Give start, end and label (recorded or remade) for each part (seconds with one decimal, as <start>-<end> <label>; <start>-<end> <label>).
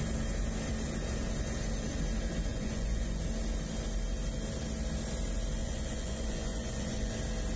0.0-2.5 recorded; 2.5-3.2 remade; 3.2-5.6 recorded; 5.6-7.1 remade; 7.1-7.6 recorded